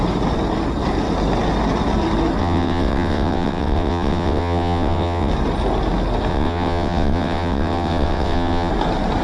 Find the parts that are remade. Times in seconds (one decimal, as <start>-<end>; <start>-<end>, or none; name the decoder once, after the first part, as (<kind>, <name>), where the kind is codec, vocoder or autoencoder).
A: 2.4-5.3 (vocoder, WaveNeXt); 6.3-8.7